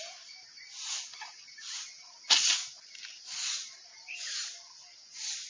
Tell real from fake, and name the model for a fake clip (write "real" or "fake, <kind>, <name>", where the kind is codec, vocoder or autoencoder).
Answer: real